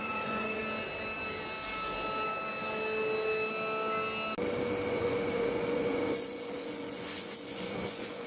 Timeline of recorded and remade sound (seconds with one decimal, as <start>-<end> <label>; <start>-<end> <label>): 0.0-0.6 remade; 0.6-4.9 recorded; 4.9-8.3 remade